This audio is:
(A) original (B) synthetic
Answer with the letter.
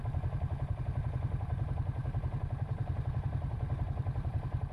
B